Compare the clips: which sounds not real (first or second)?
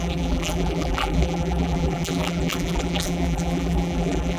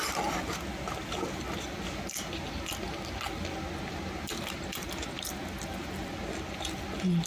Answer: first